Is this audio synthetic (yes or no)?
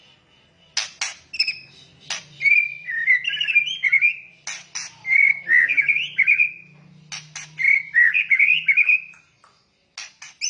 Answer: no